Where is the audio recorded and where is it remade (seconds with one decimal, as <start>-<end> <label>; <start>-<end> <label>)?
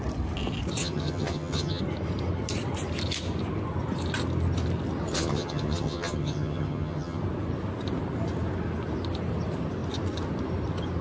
0.0-0.8 recorded; 0.8-1.8 remade; 1.8-5.1 recorded; 5.1-7.2 remade; 7.2-11.0 recorded